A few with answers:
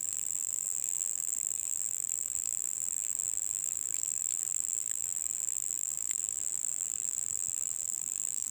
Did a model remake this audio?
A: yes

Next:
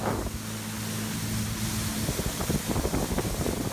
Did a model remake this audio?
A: no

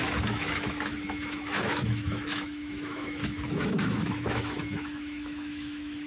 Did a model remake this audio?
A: yes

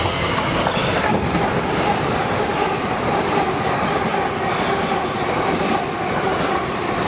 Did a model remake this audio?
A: no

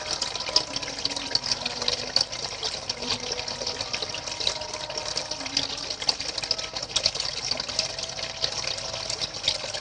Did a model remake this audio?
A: no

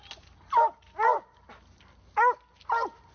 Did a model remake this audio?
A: no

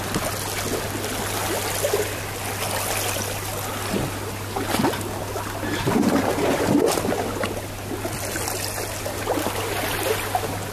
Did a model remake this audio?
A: no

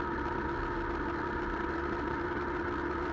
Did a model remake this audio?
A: no